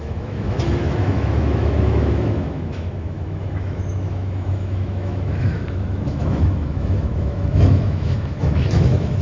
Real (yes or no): no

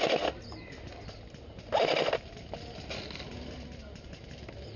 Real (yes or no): yes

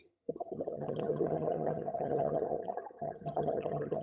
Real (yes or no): no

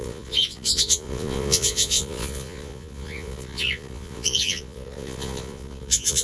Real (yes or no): no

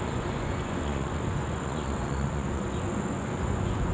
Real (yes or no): no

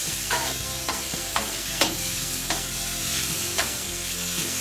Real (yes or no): no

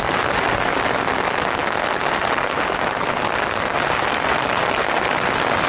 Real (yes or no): yes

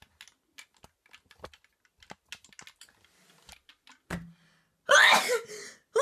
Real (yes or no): yes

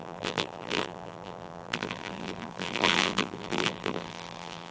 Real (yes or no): no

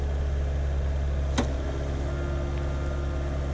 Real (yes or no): yes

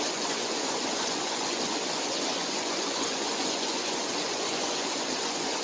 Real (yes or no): no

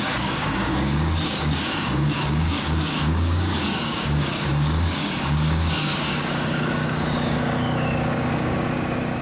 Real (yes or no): no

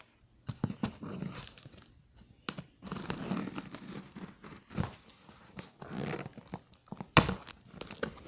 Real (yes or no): yes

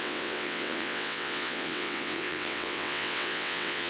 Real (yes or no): no